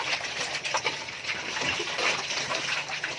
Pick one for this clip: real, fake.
fake